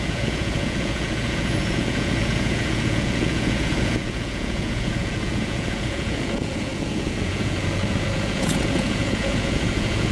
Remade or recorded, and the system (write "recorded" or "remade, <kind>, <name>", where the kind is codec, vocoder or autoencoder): remade, vocoder, Vocos